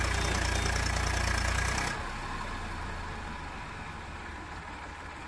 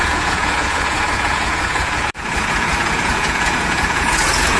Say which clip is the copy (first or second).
second